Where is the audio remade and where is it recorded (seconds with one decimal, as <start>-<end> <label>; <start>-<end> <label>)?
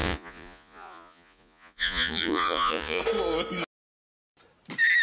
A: 0.0-3.0 remade; 3.0-5.0 recorded